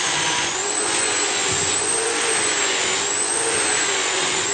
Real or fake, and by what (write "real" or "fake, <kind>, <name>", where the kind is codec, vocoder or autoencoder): fake, vocoder, Vocos